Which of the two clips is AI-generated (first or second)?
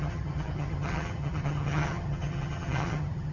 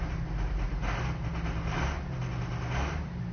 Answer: first